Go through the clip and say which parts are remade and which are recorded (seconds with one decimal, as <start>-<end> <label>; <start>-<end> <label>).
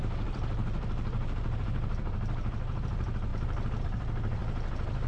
0.0-3.3 remade; 3.3-3.8 recorded; 3.8-4.4 remade; 4.4-5.1 recorded